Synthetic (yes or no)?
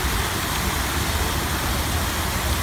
no